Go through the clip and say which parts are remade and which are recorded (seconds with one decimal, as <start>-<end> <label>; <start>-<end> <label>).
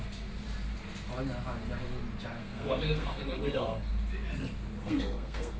0.0-2.4 recorded; 2.4-3.9 remade; 3.9-4.8 recorded; 4.8-5.6 remade